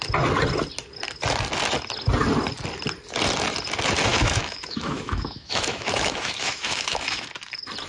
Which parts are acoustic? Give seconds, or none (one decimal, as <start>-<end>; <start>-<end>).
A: 0.0-4.1; 7.3-7.9